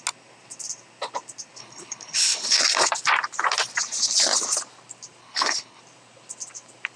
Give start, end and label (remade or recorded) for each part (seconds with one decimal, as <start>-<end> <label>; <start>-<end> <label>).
0.0-1.6 recorded; 1.6-2.6 remade; 2.6-5.2 recorded; 5.2-5.8 remade; 5.8-7.0 recorded